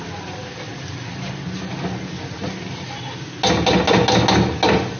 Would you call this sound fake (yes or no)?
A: no